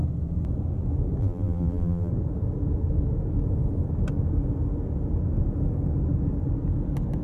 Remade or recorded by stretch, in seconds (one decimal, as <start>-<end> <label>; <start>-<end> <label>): 0.0-1.2 recorded; 1.2-2.1 remade; 2.1-7.2 recorded